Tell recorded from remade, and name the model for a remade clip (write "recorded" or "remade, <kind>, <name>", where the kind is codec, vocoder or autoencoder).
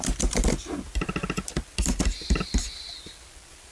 recorded